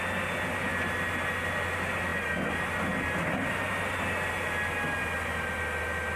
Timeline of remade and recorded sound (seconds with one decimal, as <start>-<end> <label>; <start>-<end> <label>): 0.0-6.2 recorded